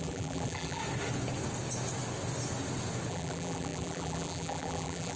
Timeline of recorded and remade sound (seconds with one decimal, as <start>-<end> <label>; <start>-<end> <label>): 0.0-0.8 remade; 0.8-3.1 recorded; 3.1-5.2 remade